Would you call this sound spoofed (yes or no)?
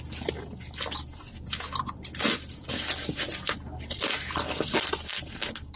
no